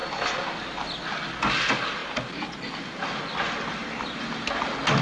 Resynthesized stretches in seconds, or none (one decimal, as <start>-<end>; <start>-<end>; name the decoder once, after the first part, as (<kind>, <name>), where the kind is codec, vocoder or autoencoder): none